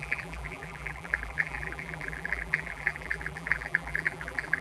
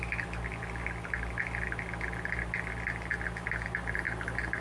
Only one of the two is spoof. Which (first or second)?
first